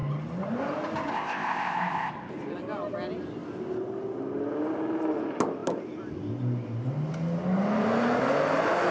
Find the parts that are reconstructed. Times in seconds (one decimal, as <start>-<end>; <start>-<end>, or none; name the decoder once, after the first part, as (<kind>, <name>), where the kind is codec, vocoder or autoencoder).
1.1-2.1 (codec, ZipCodec)